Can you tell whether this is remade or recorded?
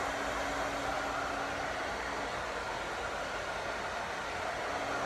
recorded